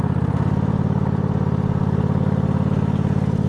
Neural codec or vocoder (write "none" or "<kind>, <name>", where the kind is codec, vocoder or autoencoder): none